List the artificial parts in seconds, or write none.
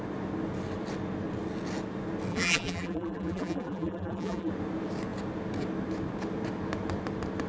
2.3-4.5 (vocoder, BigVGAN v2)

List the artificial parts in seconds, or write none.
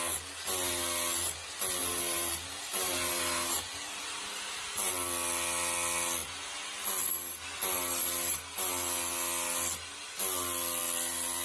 1.8-4.9 (vocoder, BigVGAN v2)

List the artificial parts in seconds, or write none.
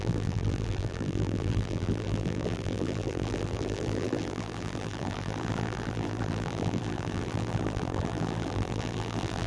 0.0-9.5 (vocoder, BigVGAN v2)